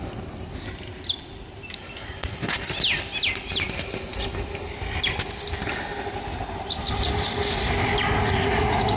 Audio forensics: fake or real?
real